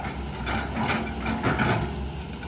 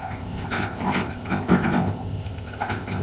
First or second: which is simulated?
second